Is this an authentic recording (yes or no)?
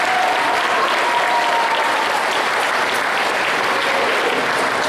yes